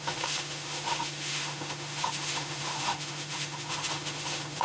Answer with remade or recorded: remade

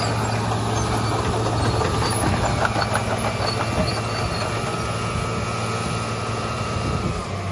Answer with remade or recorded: recorded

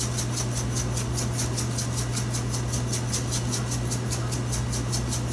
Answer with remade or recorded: recorded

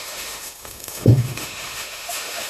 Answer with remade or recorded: remade